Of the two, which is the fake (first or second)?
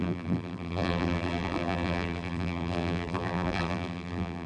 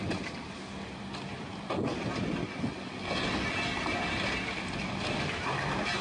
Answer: first